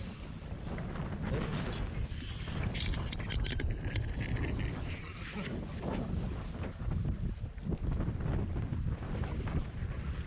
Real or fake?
real